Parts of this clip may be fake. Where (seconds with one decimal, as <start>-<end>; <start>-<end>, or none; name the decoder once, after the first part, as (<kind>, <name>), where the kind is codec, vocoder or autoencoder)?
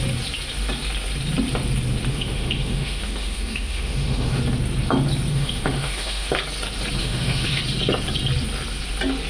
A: 2.1-4.4 (autoencoder, DAC-VAE); 5.3-6.3; 7.0-7.6